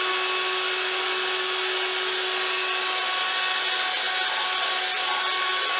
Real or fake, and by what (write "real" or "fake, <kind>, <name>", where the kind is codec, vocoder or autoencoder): real